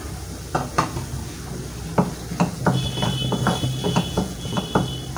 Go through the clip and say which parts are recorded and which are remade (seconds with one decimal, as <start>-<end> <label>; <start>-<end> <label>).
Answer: 0.0-3.8 recorded; 3.8-4.6 remade; 4.6-5.2 recorded